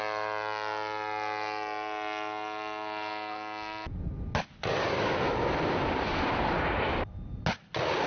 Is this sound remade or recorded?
recorded